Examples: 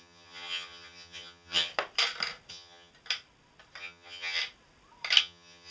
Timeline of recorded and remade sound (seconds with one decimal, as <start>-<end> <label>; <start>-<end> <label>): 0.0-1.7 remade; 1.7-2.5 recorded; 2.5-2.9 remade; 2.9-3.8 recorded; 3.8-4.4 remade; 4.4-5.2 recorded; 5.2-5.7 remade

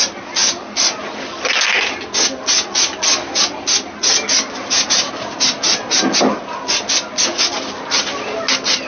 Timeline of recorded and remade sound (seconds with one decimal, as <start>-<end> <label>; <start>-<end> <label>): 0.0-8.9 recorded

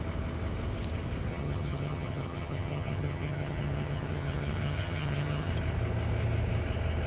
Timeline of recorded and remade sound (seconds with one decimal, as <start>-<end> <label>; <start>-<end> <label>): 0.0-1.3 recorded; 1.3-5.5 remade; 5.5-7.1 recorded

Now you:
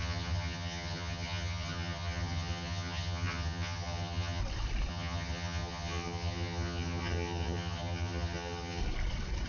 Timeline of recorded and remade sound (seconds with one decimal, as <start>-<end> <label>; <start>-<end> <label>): 0.0-4.4 remade; 4.4-4.9 recorded; 4.9-8.8 remade; 8.8-9.5 recorded

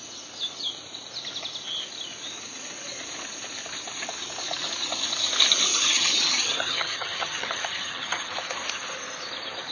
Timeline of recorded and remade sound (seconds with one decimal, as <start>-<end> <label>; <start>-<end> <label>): 0.0-5.7 recorded; 5.7-8.3 remade; 8.3-9.7 recorded